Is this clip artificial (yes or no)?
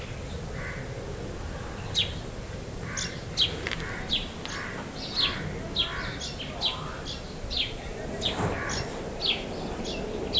no